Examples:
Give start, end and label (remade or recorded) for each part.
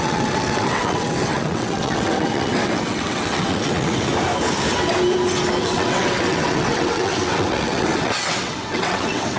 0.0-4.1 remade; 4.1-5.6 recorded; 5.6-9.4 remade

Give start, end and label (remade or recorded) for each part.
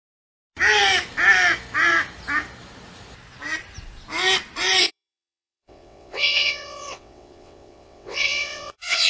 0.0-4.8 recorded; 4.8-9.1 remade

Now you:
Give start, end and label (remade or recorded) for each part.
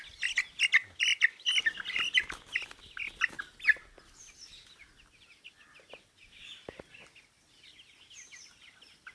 0.0-9.1 recorded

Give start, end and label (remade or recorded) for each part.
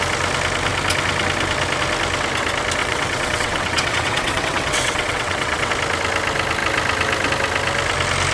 0.0-2.8 recorded; 2.8-5.7 remade; 5.7-8.3 recorded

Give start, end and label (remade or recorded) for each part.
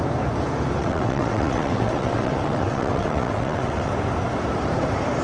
0.0-0.8 recorded; 0.8-3.9 remade; 3.9-5.2 recorded